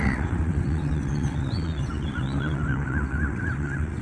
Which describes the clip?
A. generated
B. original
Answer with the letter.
A